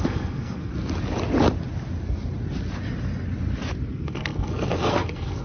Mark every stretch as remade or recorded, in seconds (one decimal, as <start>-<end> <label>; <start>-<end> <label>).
0.0-0.7 remade; 0.7-3.9 recorded; 3.9-5.4 remade